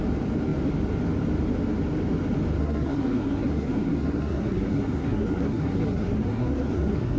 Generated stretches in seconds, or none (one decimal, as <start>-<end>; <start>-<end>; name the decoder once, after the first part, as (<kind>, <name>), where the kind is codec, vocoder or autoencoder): 2.6-7.2 (codec, SNAC)